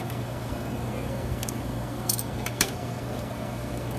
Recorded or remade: remade